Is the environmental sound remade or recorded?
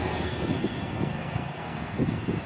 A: remade